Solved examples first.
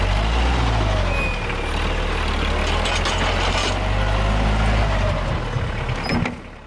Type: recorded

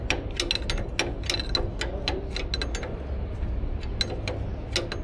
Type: recorded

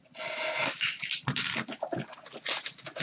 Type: recorded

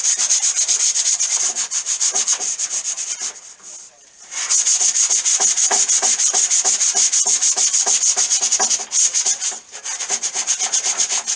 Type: recorded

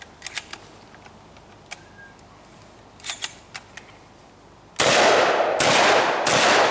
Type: recorded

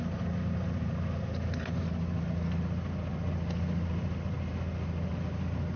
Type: recorded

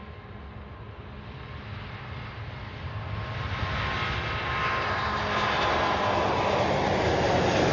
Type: recorded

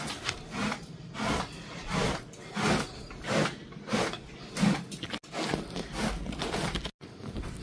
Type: recorded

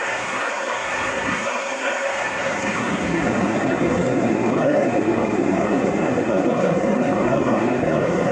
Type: remade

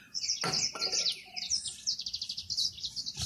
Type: recorded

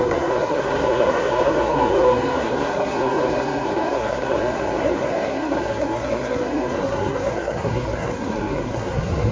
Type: remade